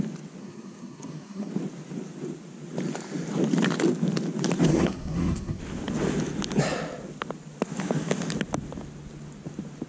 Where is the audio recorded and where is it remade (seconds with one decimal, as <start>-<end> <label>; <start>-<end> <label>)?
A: 0.0-0.4 recorded; 0.4-1.5 remade; 1.5-4.7 recorded; 4.7-5.6 remade; 5.6-9.9 recorded